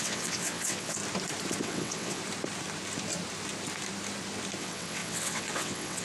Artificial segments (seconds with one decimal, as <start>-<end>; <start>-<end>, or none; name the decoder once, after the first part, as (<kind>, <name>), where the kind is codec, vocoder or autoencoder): 0.0-1.0 (vocoder, WaveNeXt); 1.6-2.2; 4.6-6.0

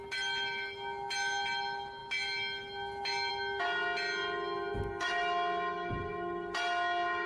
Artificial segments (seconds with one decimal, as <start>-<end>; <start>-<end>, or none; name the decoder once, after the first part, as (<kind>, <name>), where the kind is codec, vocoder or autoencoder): none

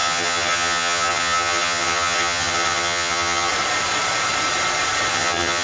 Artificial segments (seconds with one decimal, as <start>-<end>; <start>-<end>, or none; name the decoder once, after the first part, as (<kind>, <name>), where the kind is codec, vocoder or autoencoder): 0.0-3.5 (vocoder, HiFi-GAN); 5.1-5.6

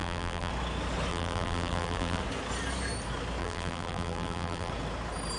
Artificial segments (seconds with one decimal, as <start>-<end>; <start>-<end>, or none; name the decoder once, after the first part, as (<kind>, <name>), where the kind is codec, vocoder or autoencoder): 0.0-0.5 (vocoder, BigVGAN v2); 1.1-2.2; 3.4-4.7